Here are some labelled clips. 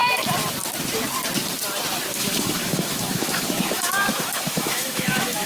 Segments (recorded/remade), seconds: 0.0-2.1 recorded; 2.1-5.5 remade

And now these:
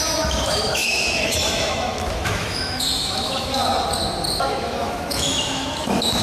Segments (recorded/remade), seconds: 0.0-3.6 remade; 3.6-4.6 recorded; 4.6-6.2 remade

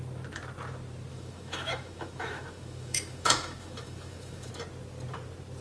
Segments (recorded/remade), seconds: 0.0-1.1 recorded; 1.1-4.5 remade; 4.5-5.6 recorded

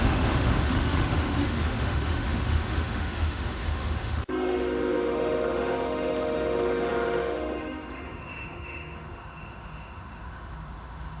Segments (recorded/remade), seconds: 0.0-11.2 remade

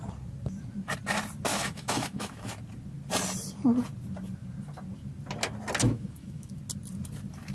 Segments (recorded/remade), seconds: 0.0-1.5 recorded; 1.5-2.6 remade; 2.6-5.8 recorded; 5.8-6.5 remade; 6.5-7.5 recorded

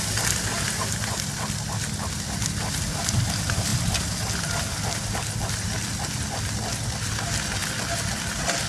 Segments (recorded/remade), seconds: 0.0-8.7 recorded

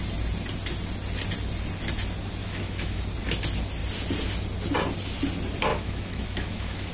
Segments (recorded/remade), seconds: 0.0-2.4 recorded; 2.4-3.0 remade; 3.0-5.7 recorded; 5.7-6.9 remade

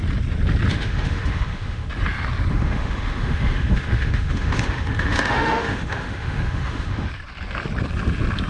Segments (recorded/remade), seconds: 0.0-0.7 recorded; 0.7-1.9 remade; 1.9-2.5 recorded; 2.5-7.1 remade; 7.1-8.5 recorded